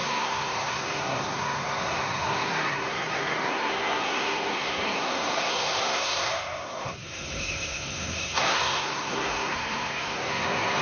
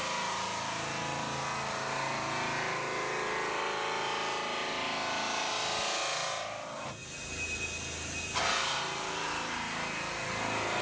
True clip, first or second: second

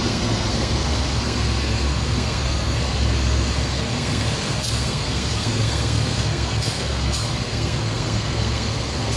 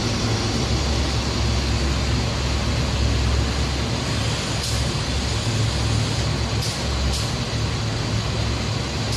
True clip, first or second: second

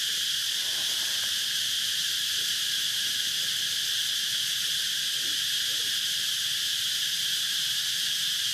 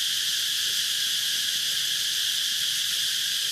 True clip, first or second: second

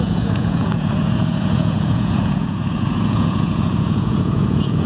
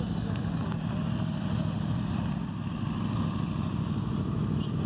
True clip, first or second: second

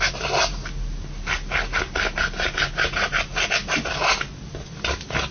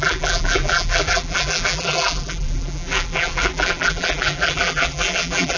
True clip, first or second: first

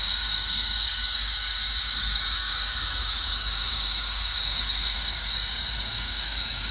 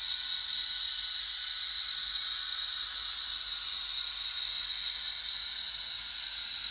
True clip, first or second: second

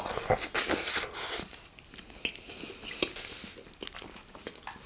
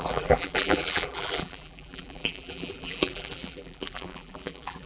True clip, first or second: first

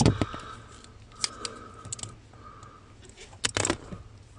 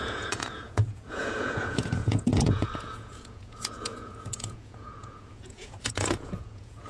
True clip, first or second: first